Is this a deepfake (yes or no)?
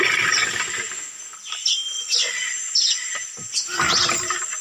no